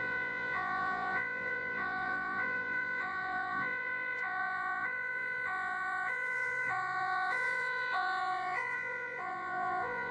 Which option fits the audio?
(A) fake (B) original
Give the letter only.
A